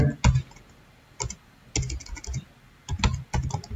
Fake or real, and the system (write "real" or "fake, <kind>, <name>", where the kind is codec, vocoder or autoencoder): real